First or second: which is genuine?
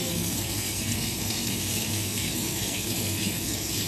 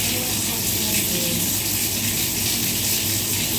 second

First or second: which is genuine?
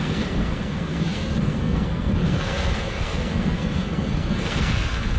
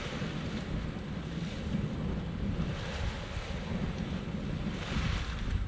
second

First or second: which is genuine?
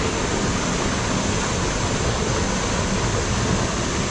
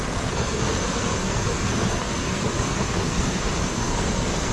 first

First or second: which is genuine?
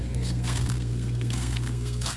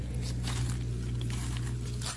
second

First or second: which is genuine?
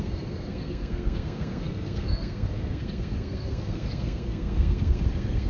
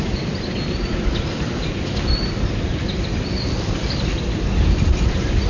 second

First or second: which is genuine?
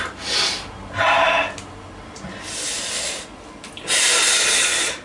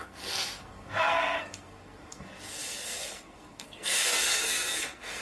first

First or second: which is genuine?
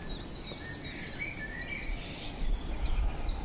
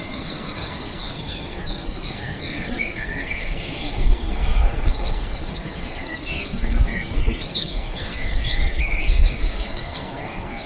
first